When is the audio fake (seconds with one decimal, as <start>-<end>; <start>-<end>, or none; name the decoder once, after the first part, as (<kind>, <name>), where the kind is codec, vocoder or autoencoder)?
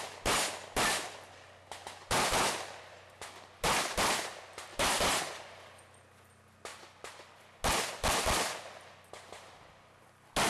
none